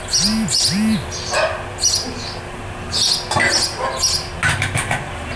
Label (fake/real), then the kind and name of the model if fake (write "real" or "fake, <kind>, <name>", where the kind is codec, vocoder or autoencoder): real